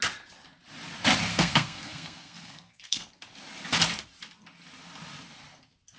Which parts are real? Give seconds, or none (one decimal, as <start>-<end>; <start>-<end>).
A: 0.0-1.3; 3.1-6.0